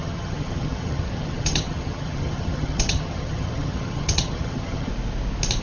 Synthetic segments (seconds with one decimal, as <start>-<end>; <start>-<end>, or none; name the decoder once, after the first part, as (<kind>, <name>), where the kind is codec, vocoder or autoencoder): 0.0-4.9 (vocoder, HiFi-GAN)